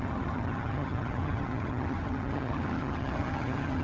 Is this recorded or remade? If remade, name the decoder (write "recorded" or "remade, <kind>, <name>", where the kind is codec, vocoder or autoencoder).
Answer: remade, vocoder, HiFi-GAN